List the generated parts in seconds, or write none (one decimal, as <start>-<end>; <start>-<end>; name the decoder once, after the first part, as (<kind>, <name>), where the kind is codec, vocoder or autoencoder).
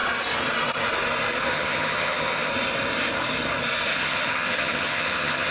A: 1.5-2.5 (vocoder, HiFi-GAN); 3.9-5.5